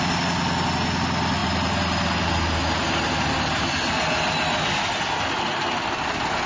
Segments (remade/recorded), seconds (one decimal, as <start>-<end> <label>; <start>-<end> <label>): 0.0-6.5 recorded